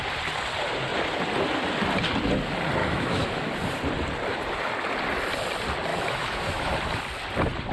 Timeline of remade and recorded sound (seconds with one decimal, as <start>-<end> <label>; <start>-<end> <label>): 0.0-2.8 recorded; 2.8-3.5 remade; 3.5-5.9 recorded; 5.9-6.7 remade; 6.7-7.7 recorded

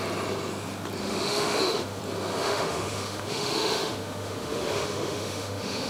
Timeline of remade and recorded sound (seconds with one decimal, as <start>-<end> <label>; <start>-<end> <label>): 0.0-1.0 recorded; 1.0-2.0 remade; 2.0-2.4 recorded; 2.4-5.9 remade

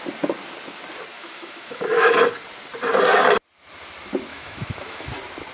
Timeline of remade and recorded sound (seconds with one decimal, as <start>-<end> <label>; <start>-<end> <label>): 0.0-1.1 recorded; 1.1-2.3 remade; 2.3-4.3 recorded; 4.3-5.1 remade; 5.1-5.5 recorded

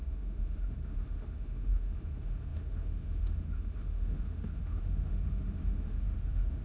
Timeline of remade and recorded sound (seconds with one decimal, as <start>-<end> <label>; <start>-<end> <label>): 0.0-6.6 remade

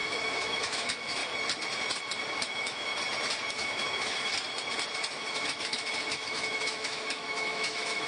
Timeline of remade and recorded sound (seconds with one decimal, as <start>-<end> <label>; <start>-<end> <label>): 0.0-1.2 remade; 1.2-2.5 recorded; 2.5-2.9 remade; 2.9-3.5 recorded; 3.5-4.3 remade; 4.3-5.1 recorded; 5.1-8.1 remade